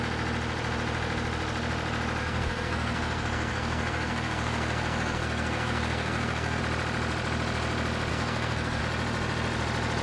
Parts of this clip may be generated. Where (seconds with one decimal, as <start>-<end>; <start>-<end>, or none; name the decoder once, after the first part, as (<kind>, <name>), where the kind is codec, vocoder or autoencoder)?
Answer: 2.2-6.6 (codec, SNAC); 8.1-8.8

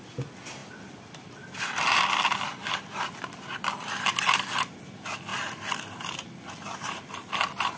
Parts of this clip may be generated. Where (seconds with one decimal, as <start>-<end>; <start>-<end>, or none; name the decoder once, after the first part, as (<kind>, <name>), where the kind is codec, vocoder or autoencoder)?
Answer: none

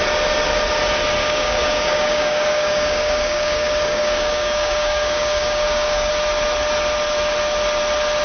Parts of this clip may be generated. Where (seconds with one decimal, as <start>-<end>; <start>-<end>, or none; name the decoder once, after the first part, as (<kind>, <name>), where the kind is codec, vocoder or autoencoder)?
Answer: 1.2-6.1 (codec, DAC)

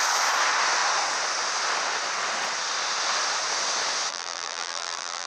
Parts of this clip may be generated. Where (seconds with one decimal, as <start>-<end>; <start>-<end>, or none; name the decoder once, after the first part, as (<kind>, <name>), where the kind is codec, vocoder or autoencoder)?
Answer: 4.1-5.3 (vocoder, BigVGAN v2)

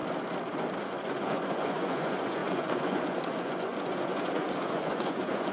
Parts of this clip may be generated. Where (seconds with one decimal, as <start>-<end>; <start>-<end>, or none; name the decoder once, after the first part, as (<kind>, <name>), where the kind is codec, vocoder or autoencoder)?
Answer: 0.8-5.5 (vocoder, Vocos)